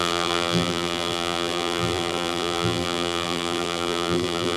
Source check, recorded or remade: remade